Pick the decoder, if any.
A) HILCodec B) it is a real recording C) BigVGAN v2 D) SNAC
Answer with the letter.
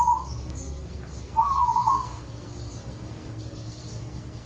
D